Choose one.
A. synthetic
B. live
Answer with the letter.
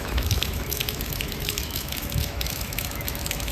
A